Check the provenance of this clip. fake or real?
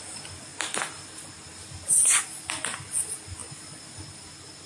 real